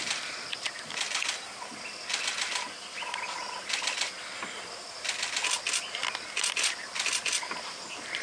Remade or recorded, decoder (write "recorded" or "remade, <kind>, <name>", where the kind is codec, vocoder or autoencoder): recorded